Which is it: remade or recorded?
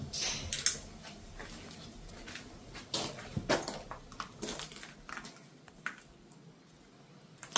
recorded